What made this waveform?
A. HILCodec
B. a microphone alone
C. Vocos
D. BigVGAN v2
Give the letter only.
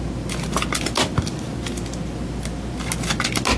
B